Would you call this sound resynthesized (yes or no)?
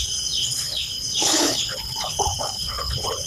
yes